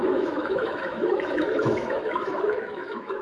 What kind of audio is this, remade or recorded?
remade